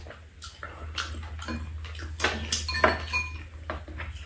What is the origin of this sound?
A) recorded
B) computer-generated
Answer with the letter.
A